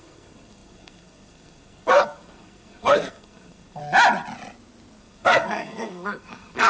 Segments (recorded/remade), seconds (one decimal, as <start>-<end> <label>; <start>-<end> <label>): 0.0-3.8 remade; 3.8-5.0 recorded; 5.0-6.7 remade